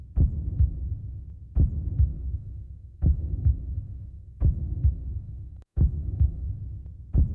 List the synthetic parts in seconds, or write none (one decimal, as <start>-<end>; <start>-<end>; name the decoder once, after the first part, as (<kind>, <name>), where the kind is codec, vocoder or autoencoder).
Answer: 2.1-6.5 (codec, SNAC)

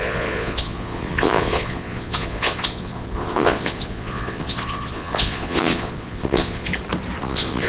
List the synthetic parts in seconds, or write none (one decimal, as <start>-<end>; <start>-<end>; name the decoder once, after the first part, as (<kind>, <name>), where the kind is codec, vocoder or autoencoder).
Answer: 0.0-6.7 (vocoder, Vocos); 7.2-7.7

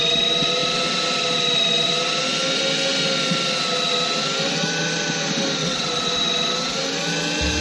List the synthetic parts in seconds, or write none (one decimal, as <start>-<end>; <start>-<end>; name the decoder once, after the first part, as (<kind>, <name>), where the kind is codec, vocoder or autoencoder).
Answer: 5.6-6.1 (vocoder, WaveNeXt)

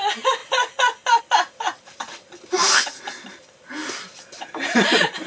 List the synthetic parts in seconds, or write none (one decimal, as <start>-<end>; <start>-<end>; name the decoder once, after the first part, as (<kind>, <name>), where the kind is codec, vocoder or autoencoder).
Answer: 0.0-0.4 (vocoder, BigVGAN v2); 1.2-5.3

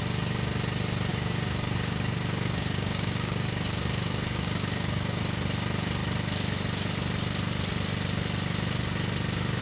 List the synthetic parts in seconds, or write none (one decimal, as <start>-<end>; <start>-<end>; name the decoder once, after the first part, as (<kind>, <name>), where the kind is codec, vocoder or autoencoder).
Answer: 1.1-5.2 (codec, DAC)